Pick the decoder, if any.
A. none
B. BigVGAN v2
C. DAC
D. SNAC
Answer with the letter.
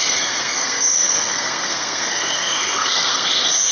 D